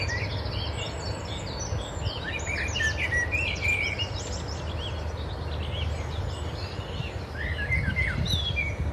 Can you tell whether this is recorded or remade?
recorded